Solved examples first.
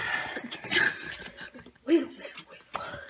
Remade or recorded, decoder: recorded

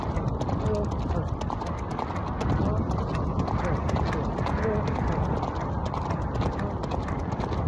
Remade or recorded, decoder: recorded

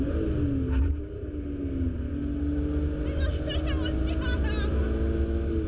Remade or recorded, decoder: recorded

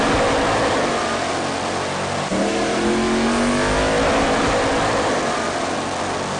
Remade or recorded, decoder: recorded